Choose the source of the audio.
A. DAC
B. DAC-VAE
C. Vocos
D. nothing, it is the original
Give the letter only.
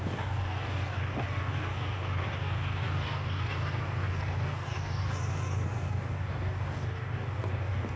A